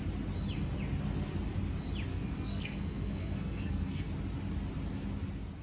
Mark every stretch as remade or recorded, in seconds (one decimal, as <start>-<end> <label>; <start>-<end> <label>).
0.0-2.1 recorded; 2.1-4.1 remade; 4.1-5.6 recorded

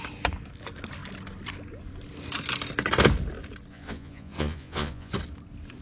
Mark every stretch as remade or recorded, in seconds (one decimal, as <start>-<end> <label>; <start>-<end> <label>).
0.0-3.7 recorded; 3.7-5.1 remade; 5.1-5.8 recorded

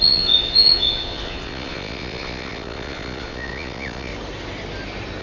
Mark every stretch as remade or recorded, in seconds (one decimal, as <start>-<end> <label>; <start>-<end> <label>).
0.0-4.1 remade; 4.1-5.2 recorded